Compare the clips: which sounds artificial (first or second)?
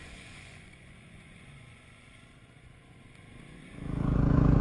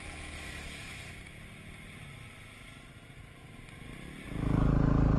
first